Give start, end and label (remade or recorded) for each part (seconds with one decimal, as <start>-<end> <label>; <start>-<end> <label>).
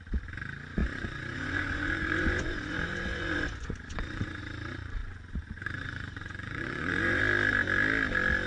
0.0-0.8 recorded; 0.8-4.4 remade; 4.4-5.0 recorded; 5.0-7.2 remade; 7.2-8.5 recorded